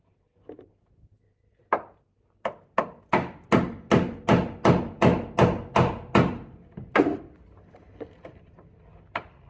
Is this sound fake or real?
real